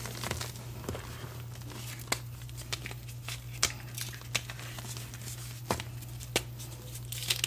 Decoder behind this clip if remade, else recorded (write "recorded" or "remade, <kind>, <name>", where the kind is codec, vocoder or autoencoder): recorded